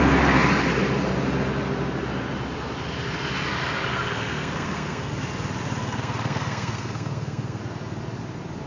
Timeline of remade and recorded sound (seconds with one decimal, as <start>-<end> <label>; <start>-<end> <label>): 0.0-3.9 recorded; 3.9-5.1 remade; 5.1-5.8 recorded; 5.8-7.6 remade; 7.6-8.7 recorded